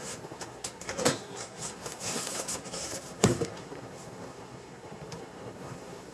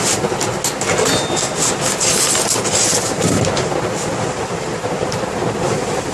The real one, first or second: second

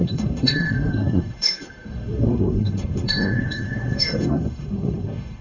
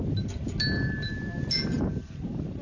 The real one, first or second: second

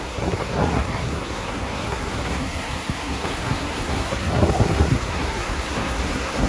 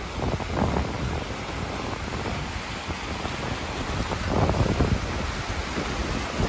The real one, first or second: second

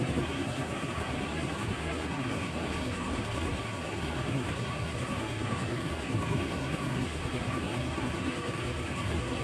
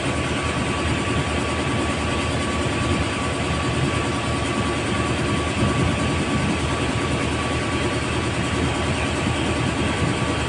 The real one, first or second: second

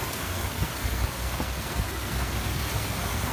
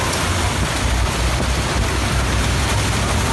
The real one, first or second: second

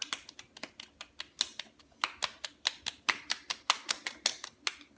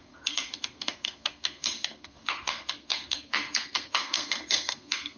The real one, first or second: first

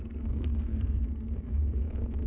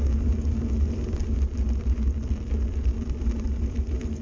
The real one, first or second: second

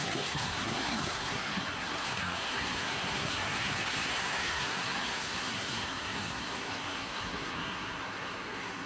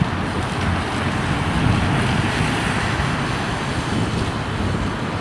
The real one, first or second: second